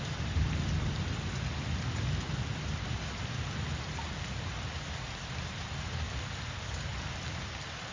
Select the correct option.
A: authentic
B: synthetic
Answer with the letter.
A